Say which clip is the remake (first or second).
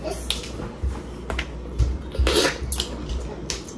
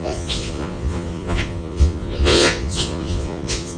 second